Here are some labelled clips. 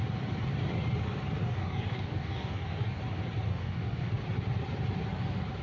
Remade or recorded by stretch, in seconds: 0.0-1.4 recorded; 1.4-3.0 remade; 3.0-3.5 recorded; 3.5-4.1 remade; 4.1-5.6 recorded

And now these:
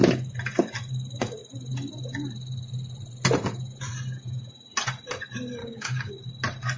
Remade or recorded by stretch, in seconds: 0.0-5.6 recorded; 5.6-6.1 remade; 6.1-6.8 recorded

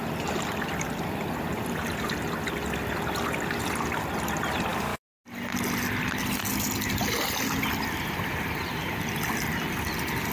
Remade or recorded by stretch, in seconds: 0.0-4.7 recorded; 4.7-5.2 remade; 5.2-10.3 recorded

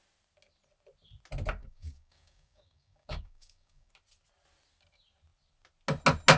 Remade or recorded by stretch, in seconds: 0.0-1.6 recorded; 1.6-3.9 remade; 3.9-6.4 recorded

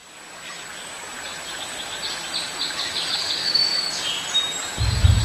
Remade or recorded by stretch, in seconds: 0.0-2.8 recorded; 2.8-3.6 remade; 3.6-5.2 recorded

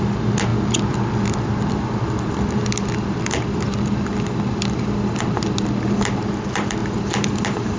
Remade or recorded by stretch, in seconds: 0.0-7.8 recorded

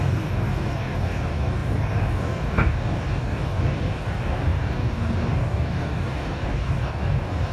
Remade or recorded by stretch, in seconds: 0.0-7.5 remade

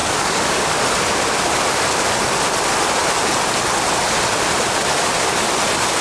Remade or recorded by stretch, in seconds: 0.0-0.8 remade; 0.8-6.0 recorded